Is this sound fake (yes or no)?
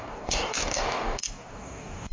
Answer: yes